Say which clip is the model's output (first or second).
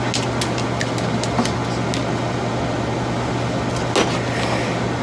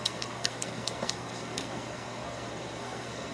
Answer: second